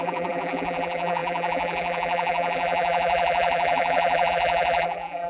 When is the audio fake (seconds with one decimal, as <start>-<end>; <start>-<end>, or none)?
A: 0.0-5.3